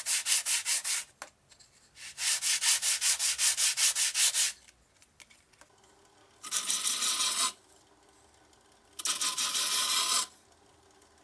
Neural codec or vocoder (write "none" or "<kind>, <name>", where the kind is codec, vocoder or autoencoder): none